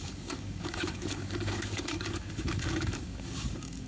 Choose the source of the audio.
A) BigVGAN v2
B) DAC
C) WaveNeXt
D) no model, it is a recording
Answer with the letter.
B